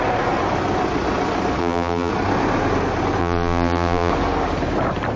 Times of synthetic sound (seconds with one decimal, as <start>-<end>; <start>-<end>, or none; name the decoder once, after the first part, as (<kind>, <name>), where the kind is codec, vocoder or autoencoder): 1.6-2.1 (vocoder, BigVGAN v2); 3.2-4.1